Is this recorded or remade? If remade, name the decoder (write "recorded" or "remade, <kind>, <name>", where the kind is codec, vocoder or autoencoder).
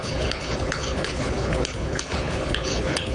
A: remade, codec, HILCodec